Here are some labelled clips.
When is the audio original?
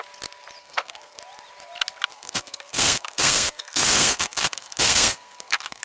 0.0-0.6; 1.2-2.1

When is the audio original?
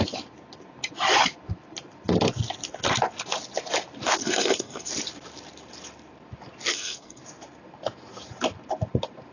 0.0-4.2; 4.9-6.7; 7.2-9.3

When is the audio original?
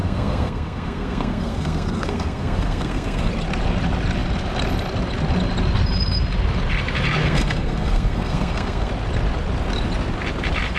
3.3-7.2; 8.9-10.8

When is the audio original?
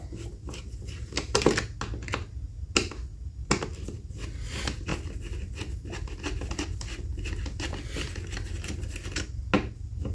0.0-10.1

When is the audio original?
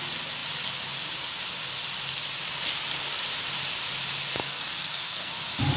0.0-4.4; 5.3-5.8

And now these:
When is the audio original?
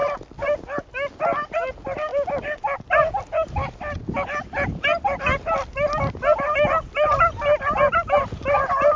0.0-9.0